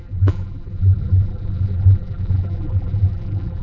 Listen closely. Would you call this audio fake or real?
fake